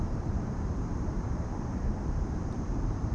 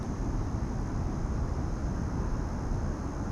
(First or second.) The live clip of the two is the second